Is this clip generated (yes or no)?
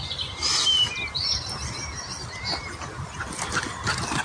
no